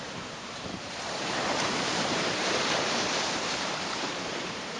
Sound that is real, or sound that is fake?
fake